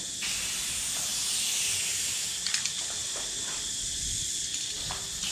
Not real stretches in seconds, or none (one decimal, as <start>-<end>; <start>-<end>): none